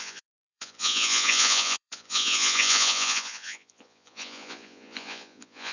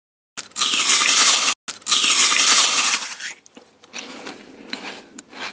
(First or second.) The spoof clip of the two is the first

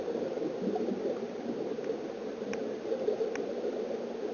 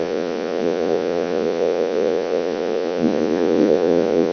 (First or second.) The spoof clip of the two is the second